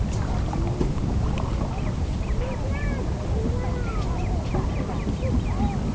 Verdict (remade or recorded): recorded